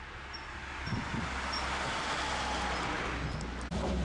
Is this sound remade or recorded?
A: recorded